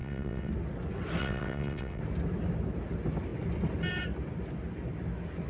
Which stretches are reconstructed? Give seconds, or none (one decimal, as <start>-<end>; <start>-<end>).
0.0-0.5; 1.2-2.0